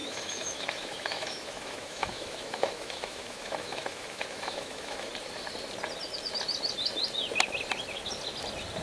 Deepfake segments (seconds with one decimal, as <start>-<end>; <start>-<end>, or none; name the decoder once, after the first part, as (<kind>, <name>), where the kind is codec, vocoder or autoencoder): 0.0-5.1 (autoencoder, DAC-VAE)